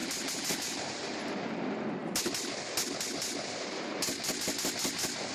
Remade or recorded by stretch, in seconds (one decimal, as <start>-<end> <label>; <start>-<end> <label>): 0.0-5.3 recorded